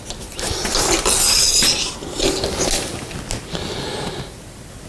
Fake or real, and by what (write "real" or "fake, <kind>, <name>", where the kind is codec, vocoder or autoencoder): real